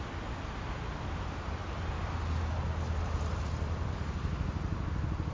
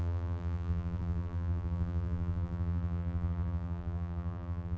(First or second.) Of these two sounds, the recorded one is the first